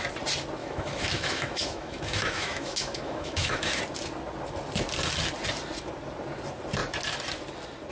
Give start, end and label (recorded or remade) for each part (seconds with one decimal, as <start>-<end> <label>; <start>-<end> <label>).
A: 0.0-0.6 recorded; 0.6-3.8 remade; 3.8-7.9 recorded